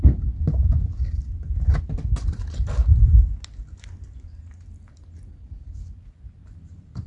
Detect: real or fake real